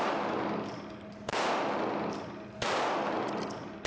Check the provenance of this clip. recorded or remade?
recorded